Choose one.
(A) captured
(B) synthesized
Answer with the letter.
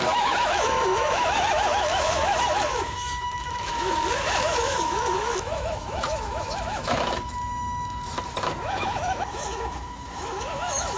B